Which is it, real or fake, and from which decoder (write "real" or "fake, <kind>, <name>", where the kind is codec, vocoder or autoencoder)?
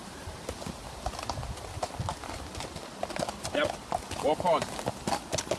real